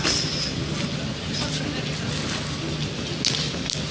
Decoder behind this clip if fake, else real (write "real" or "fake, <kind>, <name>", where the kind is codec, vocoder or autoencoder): real